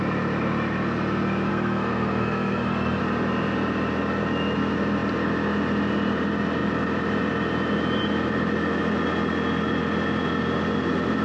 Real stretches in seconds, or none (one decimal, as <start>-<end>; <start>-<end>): 0.0-1.5; 3.0-11.2

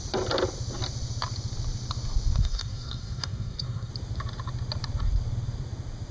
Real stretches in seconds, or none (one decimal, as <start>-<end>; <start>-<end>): 0.0-2.4; 3.9-6.1